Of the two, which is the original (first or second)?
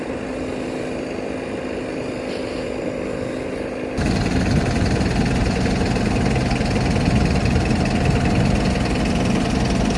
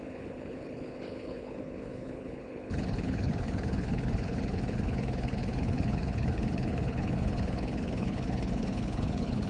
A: first